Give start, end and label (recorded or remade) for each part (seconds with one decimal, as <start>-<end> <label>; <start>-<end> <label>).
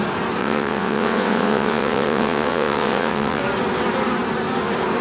0.0-0.4 recorded; 0.4-3.4 remade; 3.4-5.0 recorded